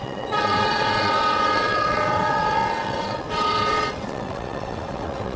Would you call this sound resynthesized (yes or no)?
yes